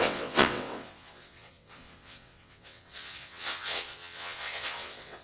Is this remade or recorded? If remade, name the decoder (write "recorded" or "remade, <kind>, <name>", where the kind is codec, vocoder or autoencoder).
remade, vocoder, WaveNeXt